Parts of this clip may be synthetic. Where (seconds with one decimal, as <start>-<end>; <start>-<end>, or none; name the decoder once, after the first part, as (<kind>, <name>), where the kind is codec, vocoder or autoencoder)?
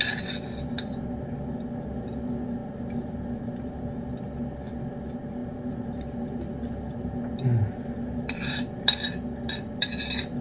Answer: none